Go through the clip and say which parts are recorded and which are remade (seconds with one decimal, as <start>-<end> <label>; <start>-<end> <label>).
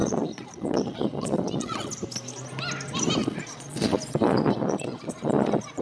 0.0-1.9 remade; 1.9-3.2 recorded; 3.2-5.8 remade